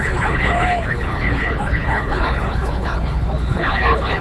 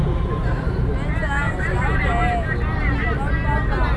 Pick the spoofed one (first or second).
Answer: first